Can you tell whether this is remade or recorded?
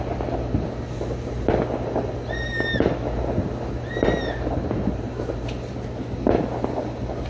recorded